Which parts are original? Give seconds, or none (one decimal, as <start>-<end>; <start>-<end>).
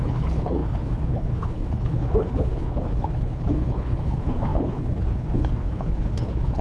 none